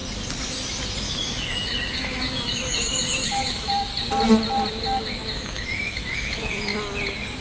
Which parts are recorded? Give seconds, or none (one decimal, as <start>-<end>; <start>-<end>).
0.0-1.0; 3.9-4.7; 6.7-7.4